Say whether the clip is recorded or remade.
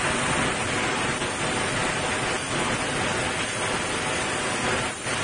recorded